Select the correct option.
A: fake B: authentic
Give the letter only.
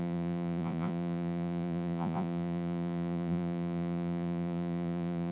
A